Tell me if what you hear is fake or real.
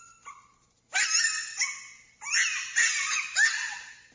real